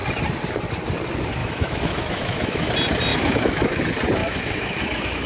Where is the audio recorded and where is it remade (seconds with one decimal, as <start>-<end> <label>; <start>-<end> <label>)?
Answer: 0.0-1.4 recorded; 1.4-2.7 remade; 2.7-3.1 recorded; 3.1-3.8 remade; 3.8-4.2 recorded; 4.2-5.3 remade